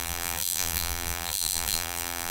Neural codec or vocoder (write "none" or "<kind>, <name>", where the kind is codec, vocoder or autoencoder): vocoder, BigVGAN v2